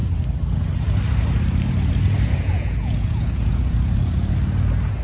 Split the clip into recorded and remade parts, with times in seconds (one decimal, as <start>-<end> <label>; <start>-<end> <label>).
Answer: 0.0-2.3 recorded; 2.3-4.3 remade; 4.3-5.0 recorded